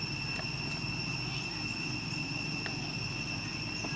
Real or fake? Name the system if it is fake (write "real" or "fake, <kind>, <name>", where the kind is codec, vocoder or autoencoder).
real